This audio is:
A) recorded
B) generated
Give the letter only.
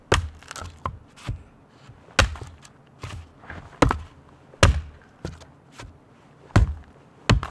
A